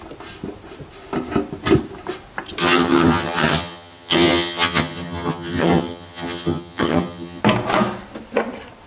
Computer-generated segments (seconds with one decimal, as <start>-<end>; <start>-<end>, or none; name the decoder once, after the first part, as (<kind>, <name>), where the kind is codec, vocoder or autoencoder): 2.6-7.4 (vocoder, HiFi-GAN)